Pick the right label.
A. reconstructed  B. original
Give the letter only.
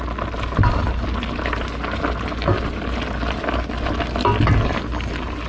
B